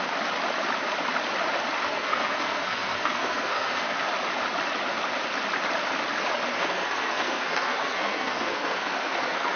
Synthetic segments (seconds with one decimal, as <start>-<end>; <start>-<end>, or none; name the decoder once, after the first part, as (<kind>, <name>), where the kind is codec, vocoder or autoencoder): 1.9-4.1 (codec, SNAC); 6.5-9.6